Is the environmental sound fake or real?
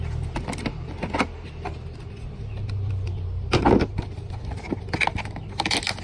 real